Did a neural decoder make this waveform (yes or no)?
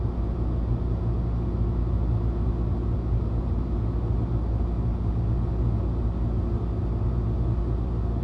no